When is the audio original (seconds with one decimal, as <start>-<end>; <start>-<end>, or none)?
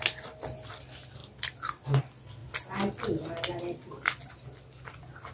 0.0-5.3